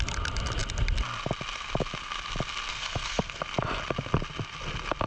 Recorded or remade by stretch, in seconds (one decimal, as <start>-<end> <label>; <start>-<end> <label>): 0.0-2.7 recorded; 2.7-3.4 remade; 3.4-5.1 recorded